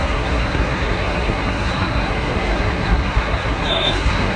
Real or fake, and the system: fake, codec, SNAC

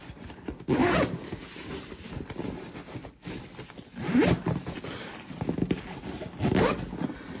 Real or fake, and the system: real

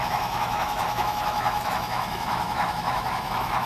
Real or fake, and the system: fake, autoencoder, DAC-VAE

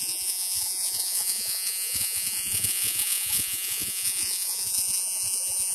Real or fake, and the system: fake, vocoder, Vocos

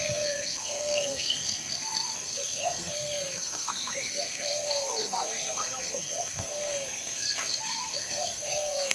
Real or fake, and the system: fake, codec, SNAC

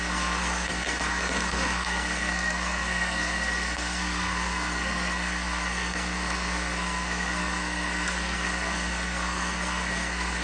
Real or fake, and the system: fake, codec, SNAC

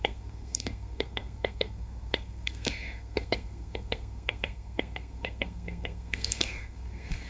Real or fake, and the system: fake, codec, SNAC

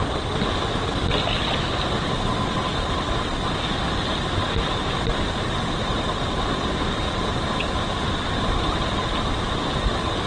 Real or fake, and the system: real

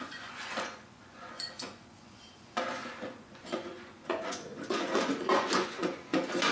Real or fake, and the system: fake, vocoder, Vocos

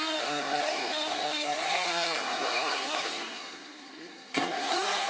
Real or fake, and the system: fake, codec, SNAC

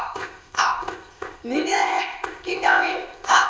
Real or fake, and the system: fake, codec, ZipCodec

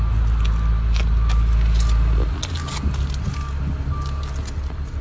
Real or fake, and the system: real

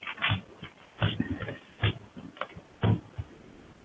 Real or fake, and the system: real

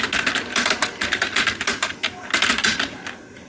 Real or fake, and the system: real